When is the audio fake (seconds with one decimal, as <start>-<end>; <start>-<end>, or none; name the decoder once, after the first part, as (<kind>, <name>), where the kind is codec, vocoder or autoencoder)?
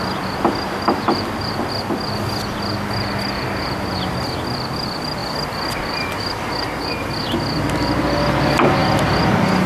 5.2-8.0 (vocoder, BigVGAN v2); 8.8-9.7